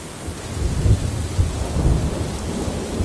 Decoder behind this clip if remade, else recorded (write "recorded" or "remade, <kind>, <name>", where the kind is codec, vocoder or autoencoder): recorded